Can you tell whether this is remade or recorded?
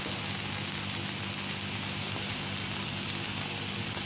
recorded